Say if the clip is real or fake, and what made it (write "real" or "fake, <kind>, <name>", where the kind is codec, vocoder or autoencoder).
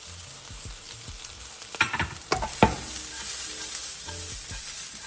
fake, vocoder, BigVGAN v2